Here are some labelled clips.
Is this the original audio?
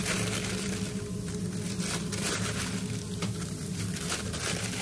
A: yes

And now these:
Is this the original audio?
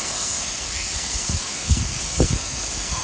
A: no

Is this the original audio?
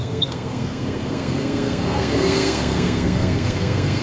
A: no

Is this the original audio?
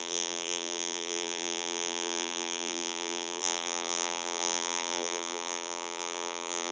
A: no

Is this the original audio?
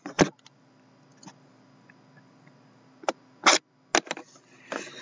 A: yes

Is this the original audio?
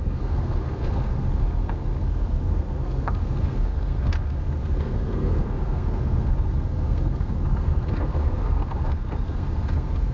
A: no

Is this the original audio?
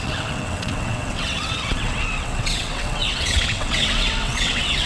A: no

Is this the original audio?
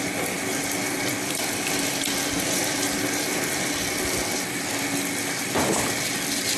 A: yes